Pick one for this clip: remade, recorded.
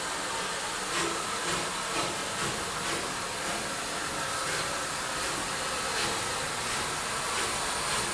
recorded